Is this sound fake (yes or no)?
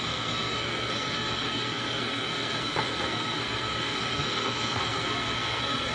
yes